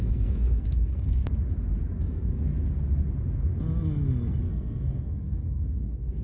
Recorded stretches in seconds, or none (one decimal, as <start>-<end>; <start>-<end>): 1.2-2.0; 2.5-4.4